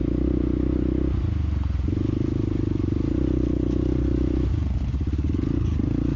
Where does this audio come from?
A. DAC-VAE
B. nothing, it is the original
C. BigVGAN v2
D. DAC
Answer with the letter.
B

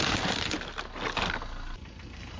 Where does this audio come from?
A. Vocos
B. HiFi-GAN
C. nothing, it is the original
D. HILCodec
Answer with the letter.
C